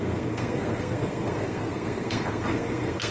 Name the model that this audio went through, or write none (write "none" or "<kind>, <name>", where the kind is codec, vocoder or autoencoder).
codec, SNAC